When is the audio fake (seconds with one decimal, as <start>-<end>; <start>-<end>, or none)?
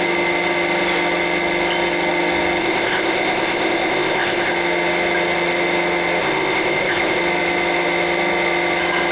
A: 2.6-4.5; 6.2-7.2